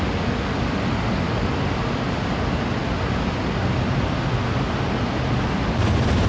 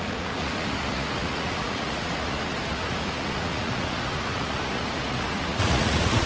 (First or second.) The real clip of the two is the first